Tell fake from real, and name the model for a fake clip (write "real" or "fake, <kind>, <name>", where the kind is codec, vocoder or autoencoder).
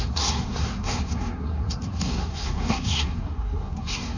fake, codec, SNAC